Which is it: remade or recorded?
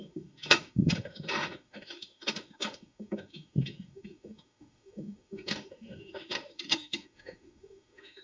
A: remade